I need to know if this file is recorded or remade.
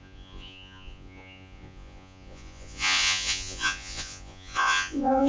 remade